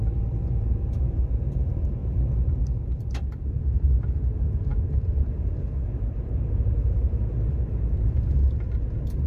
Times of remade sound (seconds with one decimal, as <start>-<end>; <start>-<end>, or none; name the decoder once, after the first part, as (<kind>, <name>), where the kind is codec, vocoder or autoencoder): 0.0-2.0 (vocoder, BigVGAN v2); 2.6-9.3